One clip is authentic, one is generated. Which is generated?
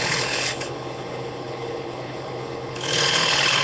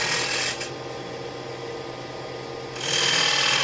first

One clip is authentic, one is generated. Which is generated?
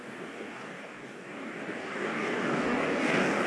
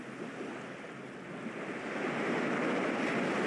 first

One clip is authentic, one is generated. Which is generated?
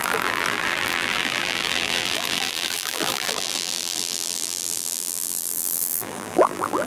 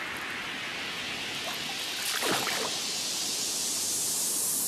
first